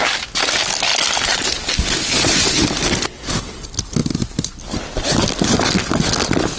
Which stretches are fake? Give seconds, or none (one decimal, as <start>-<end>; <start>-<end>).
none